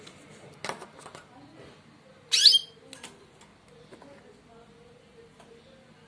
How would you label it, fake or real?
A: real